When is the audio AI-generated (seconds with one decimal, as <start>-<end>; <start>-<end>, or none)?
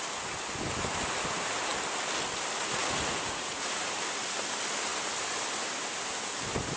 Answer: 2.8-4.0